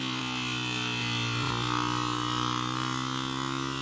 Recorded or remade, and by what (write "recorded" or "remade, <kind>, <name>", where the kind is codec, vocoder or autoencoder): recorded